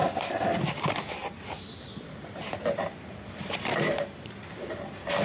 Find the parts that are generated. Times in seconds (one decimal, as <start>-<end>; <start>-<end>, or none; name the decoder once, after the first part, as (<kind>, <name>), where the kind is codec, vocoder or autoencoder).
none